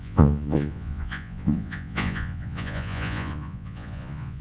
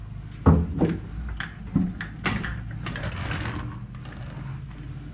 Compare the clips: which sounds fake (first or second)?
first